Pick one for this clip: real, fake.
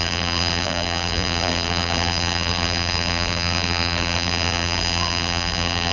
fake